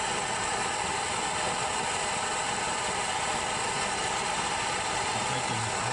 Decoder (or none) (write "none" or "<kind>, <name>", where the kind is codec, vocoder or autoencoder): none